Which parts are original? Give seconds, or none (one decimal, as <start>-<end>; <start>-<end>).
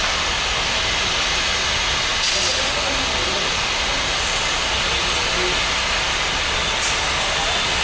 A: 0.0-7.8